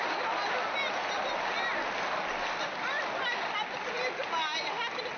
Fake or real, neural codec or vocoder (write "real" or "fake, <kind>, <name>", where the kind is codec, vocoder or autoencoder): real